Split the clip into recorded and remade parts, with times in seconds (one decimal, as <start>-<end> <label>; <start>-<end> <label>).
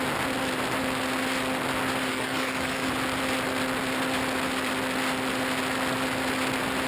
0.0-2.1 recorded; 2.1-2.9 remade; 2.9-6.9 recorded